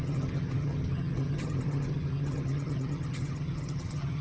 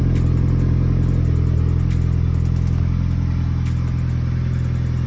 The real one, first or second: second